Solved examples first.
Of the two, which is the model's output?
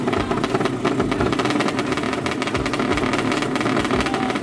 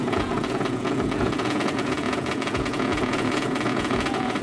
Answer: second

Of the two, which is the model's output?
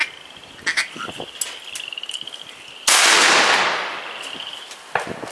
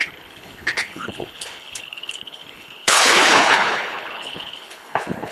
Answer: second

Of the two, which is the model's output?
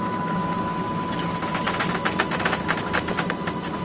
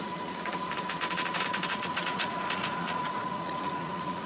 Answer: second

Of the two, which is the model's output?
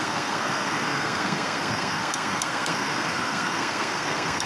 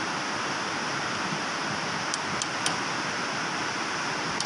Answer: first